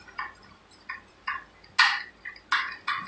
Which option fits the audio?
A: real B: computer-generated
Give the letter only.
A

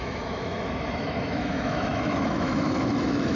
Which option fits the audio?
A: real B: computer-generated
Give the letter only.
B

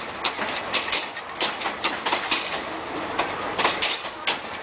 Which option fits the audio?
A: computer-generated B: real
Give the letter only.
B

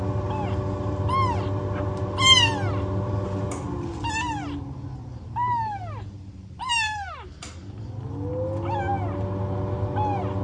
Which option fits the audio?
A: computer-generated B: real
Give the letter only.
B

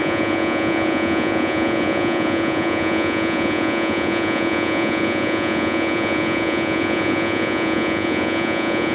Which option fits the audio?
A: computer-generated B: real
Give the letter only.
A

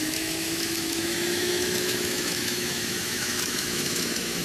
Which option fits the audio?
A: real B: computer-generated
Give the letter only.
B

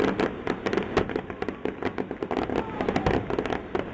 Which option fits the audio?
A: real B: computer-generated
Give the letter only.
A